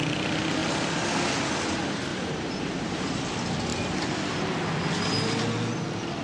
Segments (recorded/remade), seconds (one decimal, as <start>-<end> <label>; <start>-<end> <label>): 0.0-2.1 recorded; 2.1-3.2 remade; 3.2-6.2 recorded